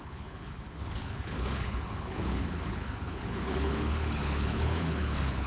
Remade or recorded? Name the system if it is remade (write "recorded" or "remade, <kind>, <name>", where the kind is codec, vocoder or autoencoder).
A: remade, codec, HILCodec